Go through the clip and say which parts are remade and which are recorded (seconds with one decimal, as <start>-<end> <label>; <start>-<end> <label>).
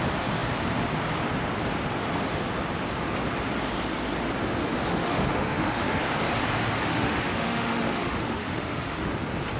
0.0-4.9 recorded; 4.9-6.0 remade; 6.0-6.9 recorded; 6.9-9.1 remade; 9.1-9.6 recorded